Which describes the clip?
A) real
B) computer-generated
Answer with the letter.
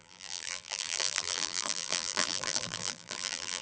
B